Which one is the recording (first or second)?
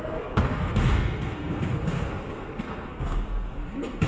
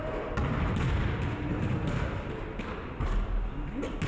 second